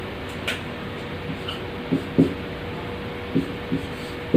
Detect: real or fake real